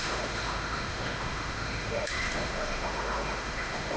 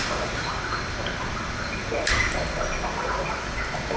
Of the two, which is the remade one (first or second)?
first